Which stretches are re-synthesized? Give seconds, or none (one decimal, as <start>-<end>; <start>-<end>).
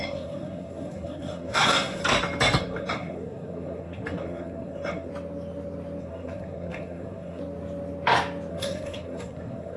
0.0-2.0; 2.6-5.1; 6.0-7.4; 8.5-9.8